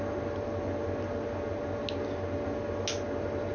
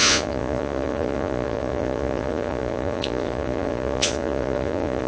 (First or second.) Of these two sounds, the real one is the first